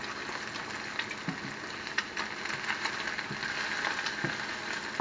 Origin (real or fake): real